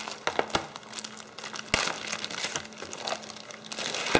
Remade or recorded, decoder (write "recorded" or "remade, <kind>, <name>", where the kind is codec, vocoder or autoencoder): recorded